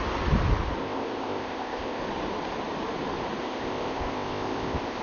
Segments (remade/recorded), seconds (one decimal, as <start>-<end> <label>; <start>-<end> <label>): 0.0-0.8 recorded; 0.8-2.0 remade; 2.0-3.4 recorded; 3.4-5.0 remade